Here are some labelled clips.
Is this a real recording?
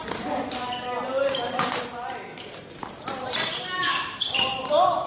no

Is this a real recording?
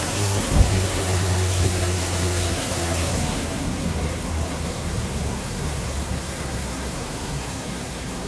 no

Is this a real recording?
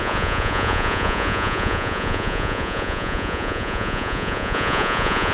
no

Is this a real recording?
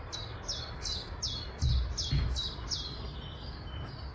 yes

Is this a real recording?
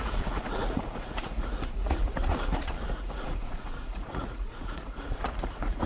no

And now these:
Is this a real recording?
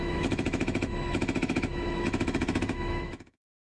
no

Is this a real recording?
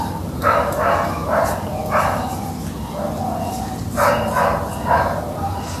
yes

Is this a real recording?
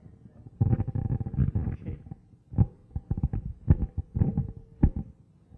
yes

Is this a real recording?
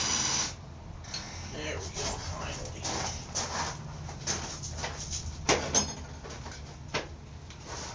yes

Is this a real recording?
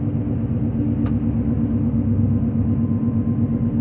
yes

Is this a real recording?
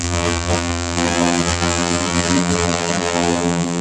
no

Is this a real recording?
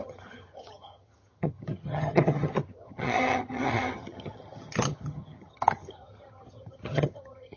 no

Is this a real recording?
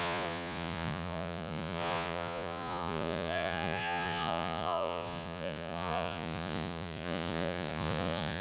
no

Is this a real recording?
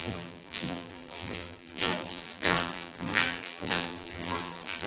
no